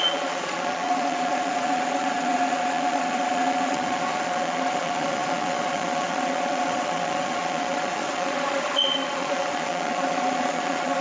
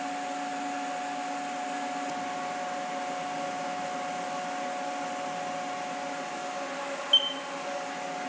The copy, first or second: first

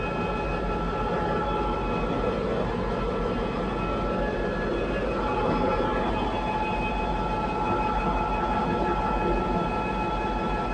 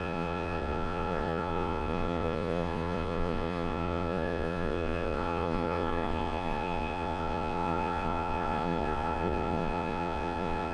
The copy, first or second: second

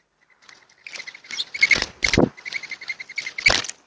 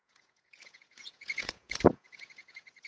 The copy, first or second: second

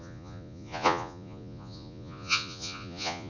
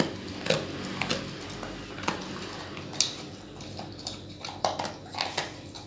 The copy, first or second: first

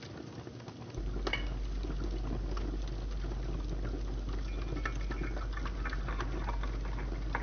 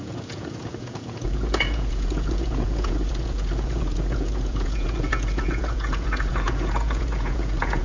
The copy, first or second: second